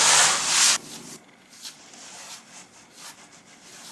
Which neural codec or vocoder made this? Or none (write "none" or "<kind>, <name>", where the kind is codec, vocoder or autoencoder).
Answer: vocoder, BigVGAN v2